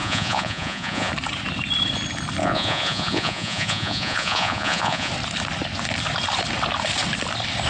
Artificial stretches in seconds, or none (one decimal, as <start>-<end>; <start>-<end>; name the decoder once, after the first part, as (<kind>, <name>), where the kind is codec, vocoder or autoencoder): 0.0-1.1 (vocoder, Vocos); 2.4-5.1

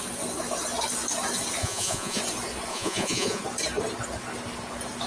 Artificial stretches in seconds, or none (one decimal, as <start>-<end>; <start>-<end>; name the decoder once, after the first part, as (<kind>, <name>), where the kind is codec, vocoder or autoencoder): 1.6-2.2 (vocoder, Vocos); 2.7-3.4

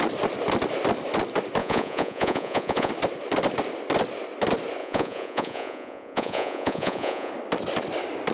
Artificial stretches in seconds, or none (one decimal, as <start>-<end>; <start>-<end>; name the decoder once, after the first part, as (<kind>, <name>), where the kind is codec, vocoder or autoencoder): 1.6-2.9 (vocoder, Vocos); 4.8-7.3